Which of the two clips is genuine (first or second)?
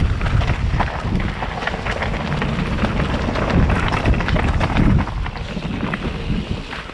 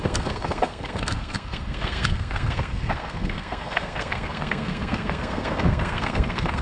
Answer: first